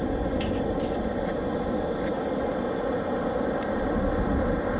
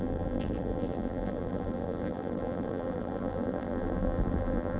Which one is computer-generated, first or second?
second